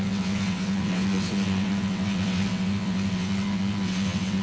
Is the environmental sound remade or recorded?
remade